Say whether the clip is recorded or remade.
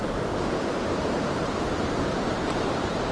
remade